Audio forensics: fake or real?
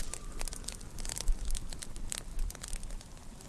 real